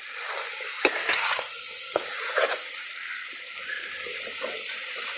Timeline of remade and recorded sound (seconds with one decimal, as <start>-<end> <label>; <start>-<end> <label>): 0.0-1.0 recorded; 1.0-2.1 remade; 2.1-5.2 recorded